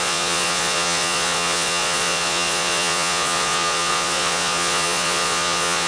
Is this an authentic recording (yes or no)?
no